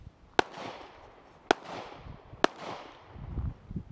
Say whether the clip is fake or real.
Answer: real